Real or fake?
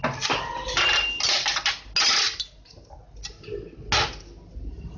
real